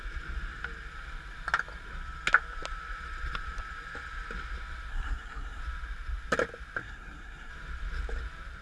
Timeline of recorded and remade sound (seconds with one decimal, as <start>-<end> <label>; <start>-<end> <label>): 0.0-4.9 recorded; 4.9-5.6 remade; 5.6-6.8 recorded; 6.8-7.5 remade; 7.5-8.6 recorded